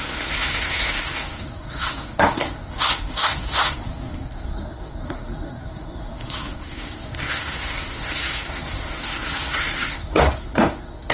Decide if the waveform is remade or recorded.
remade